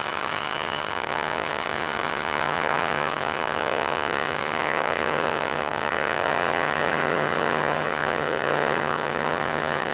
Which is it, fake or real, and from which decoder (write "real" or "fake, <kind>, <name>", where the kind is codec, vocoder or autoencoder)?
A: fake, vocoder, HiFi-GAN